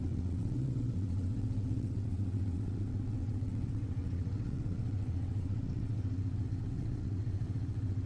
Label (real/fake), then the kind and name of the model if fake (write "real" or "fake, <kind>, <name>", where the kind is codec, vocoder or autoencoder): fake, vocoder, WaveNeXt